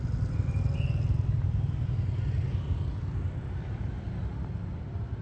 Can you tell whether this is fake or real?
real